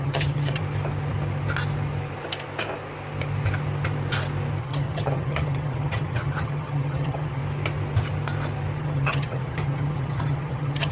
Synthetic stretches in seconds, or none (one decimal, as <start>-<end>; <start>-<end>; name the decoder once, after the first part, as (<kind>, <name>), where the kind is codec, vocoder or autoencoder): 0.0-0.6 (vocoder, HiFi-GAN); 4.6-7.4; 8.8-10.9